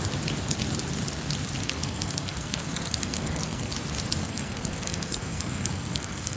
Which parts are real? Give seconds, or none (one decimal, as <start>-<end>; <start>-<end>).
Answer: 0.0-1.6; 3.7-4.2